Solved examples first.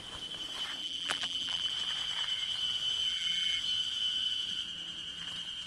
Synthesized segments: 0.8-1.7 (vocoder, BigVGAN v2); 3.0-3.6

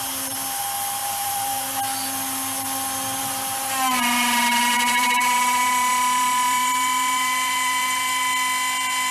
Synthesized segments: 1.0-1.8 (vocoder, BigVGAN v2); 3.2-8.1

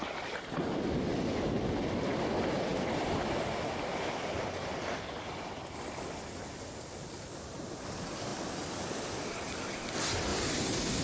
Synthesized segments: 10.3-11.0 (vocoder, BigVGAN v2)

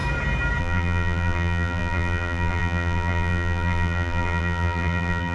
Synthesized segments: 0.6-5.3 (vocoder, BigVGAN v2)